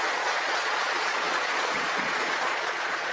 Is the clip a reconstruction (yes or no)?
yes